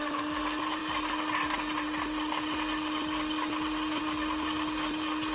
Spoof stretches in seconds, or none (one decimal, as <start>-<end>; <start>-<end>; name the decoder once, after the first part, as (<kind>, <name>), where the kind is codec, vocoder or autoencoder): none